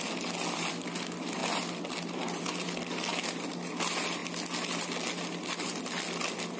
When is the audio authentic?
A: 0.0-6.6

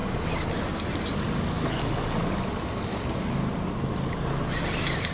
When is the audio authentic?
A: 0.0-5.1

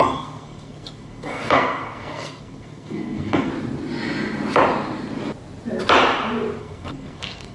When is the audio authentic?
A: 3.5-6.6

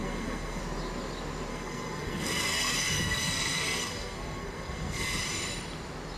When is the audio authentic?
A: 0.6-1.5; 5.2-6.2

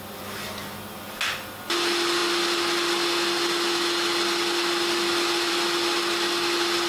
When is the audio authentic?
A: 0.0-6.9